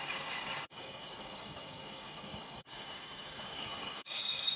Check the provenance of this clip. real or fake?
fake